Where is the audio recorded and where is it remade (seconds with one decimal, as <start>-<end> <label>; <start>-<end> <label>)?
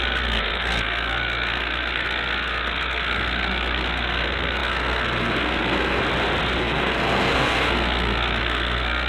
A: 0.0-6.0 remade; 6.0-6.6 recorded; 6.6-9.1 remade